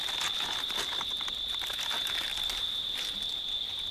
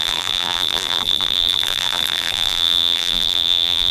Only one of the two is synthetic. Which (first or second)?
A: second